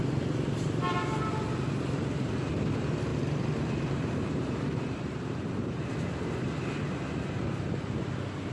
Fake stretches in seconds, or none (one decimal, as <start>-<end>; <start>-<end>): 3.1-5.8